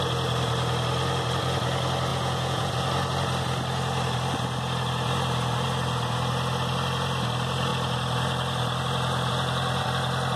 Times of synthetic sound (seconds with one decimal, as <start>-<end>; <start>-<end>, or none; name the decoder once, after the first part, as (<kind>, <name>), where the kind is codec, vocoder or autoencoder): 2.1-2.7 (vocoder, Vocos)